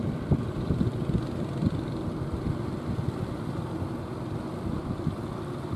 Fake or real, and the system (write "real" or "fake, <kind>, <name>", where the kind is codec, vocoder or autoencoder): real